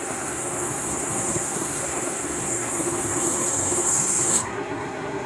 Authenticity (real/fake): fake